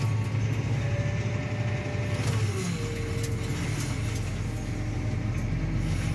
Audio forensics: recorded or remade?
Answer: recorded